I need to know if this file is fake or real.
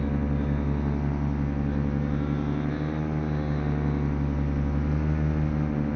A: real